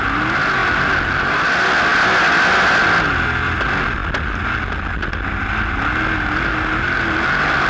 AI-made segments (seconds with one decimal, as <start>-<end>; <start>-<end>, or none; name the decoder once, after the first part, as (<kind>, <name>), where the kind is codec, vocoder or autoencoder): none

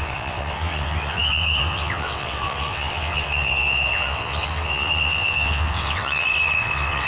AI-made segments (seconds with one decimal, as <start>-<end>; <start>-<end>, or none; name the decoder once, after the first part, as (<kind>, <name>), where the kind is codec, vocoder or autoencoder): 0.0-7.1 (vocoder, WaveNeXt)

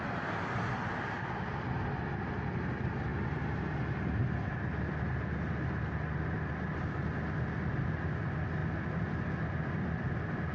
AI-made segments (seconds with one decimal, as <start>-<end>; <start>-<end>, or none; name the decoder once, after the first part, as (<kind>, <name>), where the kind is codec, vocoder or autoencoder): none

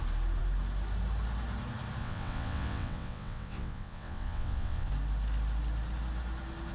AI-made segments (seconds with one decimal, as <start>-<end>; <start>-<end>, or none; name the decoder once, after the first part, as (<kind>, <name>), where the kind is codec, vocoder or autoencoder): 2.0-4.9 (vocoder, WaveNeXt)

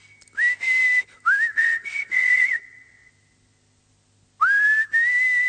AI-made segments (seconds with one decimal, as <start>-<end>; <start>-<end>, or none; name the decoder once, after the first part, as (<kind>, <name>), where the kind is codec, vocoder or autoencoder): 1.5-3.1 (vocoder, WaveNeXt)